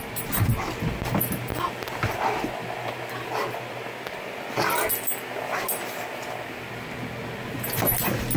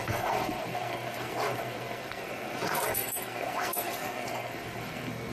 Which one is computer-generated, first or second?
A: second